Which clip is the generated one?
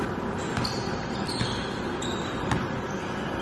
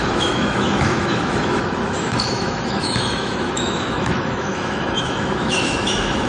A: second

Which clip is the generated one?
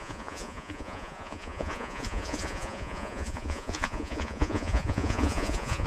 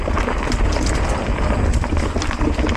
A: first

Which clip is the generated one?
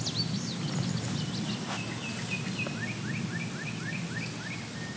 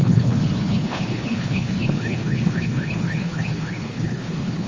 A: second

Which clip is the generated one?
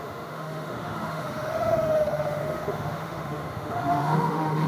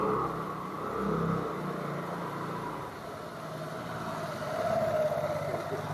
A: first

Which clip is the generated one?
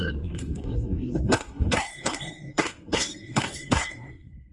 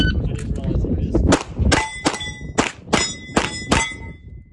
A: first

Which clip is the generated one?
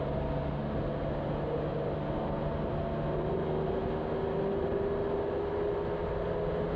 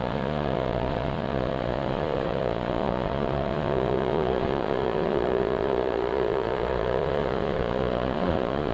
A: second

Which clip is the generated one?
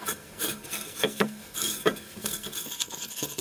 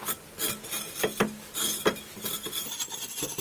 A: first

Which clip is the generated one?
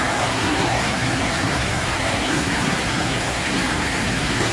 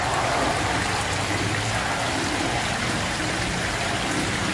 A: first